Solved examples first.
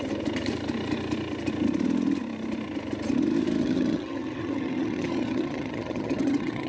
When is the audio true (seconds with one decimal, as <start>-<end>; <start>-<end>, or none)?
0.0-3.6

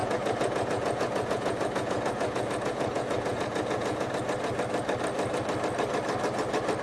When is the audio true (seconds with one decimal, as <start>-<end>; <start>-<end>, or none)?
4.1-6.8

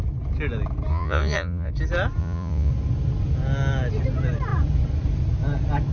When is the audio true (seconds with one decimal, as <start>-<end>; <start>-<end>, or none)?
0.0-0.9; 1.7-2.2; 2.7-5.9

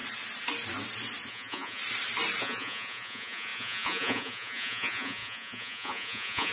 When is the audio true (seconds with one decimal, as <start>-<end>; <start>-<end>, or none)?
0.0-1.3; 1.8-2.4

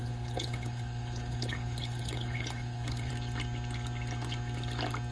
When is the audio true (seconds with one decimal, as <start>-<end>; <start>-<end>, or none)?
3.1-5.1

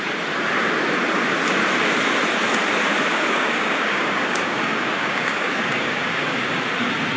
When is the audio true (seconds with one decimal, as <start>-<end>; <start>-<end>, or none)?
0.0-3.1; 6.4-7.2